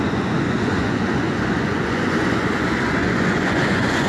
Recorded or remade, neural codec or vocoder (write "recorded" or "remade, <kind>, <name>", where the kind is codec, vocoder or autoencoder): remade, vocoder, Vocos